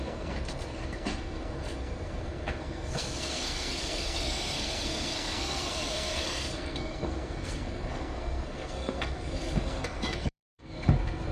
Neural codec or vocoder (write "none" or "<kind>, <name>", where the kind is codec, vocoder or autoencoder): codec, SNAC